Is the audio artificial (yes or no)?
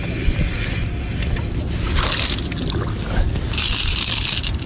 no